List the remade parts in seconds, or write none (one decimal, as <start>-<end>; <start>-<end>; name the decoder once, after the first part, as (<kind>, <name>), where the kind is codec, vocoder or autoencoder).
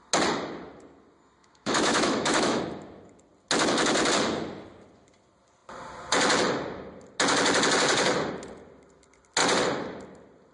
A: 1.4-2.6 (autoencoder, DAC-VAE)